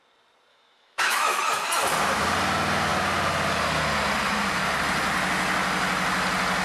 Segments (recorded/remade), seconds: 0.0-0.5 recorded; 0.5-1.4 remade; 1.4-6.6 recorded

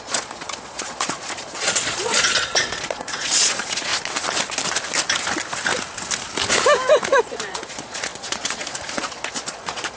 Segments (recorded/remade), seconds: 0.0-3.9 remade; 3.9-7.2 recorded; 7.2-10.0 remade